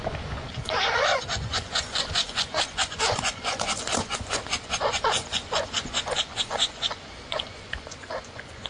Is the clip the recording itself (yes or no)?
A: no